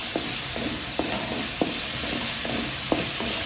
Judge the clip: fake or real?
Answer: real